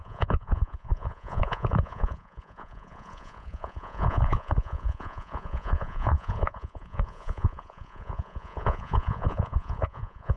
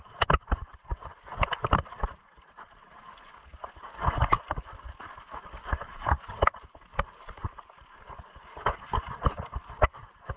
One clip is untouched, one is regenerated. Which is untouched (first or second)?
second